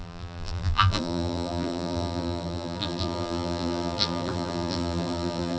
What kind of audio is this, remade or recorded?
remade